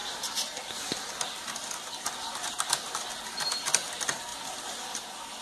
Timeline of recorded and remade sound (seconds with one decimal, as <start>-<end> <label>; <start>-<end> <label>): 0.0-5.4 recorded